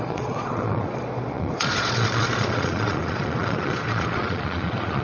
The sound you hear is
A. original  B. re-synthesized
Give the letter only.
B